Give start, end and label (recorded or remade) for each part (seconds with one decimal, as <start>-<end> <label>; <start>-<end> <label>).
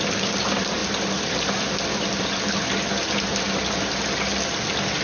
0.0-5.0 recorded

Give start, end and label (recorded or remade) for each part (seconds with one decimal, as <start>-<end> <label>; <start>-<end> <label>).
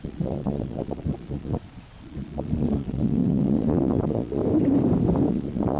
0.0-4.4 remade; 4.4-5.3 recorded; 5.3-5.8 remade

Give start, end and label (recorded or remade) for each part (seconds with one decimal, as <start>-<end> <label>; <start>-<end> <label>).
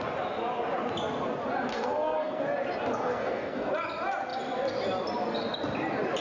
0.0-1.7 recorded; 1.7-2.4 remade; 2.4-2.9 recorded; 2.9-3.7 remade; 3.7-6.2 recorded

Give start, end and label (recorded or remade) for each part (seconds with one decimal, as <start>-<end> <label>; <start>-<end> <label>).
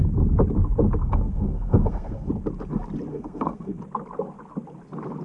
0.0-1.0 recorded; 1.0-2.3 remade; 2.3-3.1 recorded; 3.1-3.8 remade; 3.8-5.2 recorded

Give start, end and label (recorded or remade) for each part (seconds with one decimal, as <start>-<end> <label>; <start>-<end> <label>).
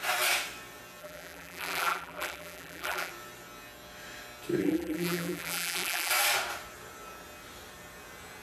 0.0-1.0 recorded; 1.0-3.1 remade; 3.1-4.6 recorded; 4.6-6.1 remade; 6.1-8.4 recorded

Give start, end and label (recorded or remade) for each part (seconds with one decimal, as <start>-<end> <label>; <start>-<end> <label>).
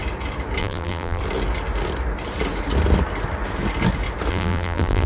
0.0-0.6 recorded; 0.6-1.2 remade; 1.2-4.3 recorded; 4.3-5.1 remade